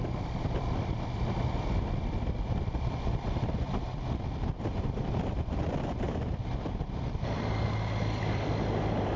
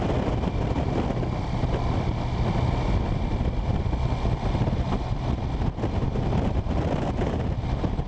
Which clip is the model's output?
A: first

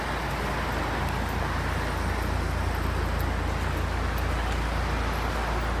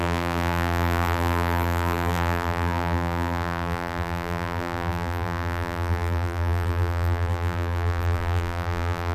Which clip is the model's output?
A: second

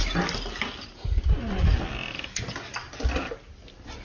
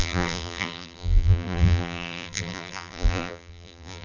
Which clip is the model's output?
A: second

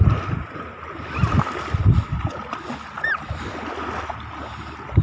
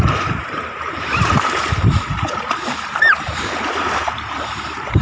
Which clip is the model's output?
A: second